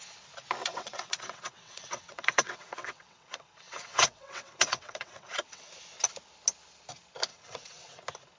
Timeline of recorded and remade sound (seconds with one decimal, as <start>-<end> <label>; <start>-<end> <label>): 0.0-0.7 recorded; 0.7-5.7 remade; 5.7-7.3 recorded; 7.3-8.0 remade; 8.0-8.4 recorded